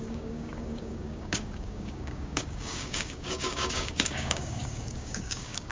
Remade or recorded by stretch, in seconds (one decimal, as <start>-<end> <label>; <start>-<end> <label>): 0.0-5.7 remade